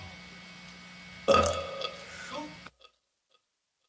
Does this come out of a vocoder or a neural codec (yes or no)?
no